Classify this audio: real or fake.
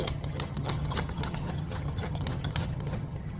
fake